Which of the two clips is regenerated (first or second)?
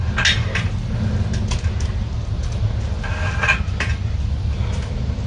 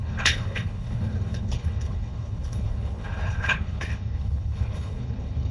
second